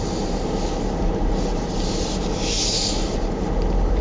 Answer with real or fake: real